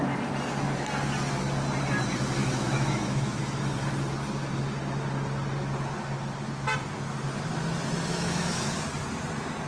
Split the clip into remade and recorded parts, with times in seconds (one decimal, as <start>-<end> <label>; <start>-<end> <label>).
0.0-2.4 recorded; 2.4-3.4 remade; 3.4-8.1 recorded; 8.1-8.7 remade; 8.7-9.7 recorded